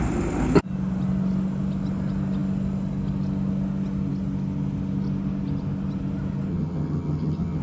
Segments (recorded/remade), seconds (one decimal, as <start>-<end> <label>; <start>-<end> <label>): 0.0-6.5 recorded; 6.5-7.6 remade